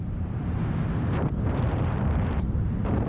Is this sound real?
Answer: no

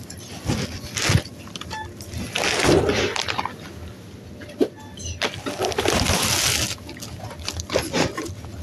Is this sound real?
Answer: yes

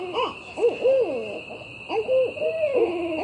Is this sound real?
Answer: yes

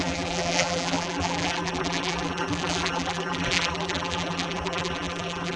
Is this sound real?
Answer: no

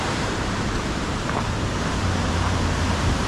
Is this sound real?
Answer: no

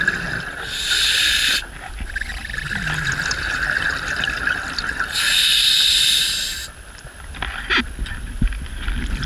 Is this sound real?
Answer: yes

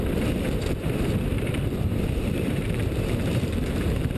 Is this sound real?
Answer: no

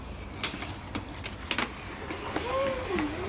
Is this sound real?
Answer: yes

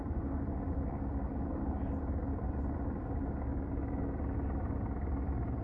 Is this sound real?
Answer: no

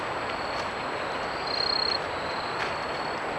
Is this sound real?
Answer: yes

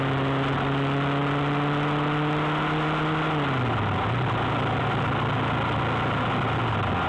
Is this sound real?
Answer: yes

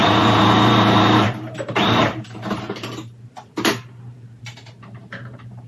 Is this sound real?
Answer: no